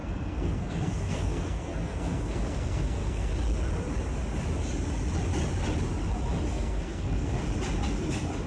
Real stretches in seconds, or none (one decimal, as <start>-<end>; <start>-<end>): 3.3-6.5; 7.4-8.5